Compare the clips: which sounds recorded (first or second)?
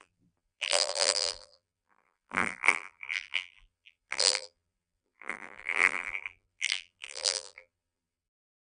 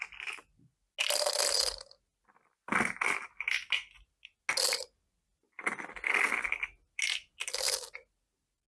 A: second